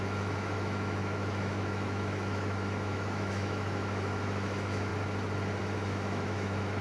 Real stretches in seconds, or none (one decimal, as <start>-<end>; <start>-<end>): 4.9-5.6